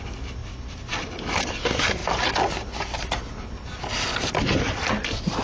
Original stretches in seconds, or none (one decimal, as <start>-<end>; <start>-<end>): 0.0-5.4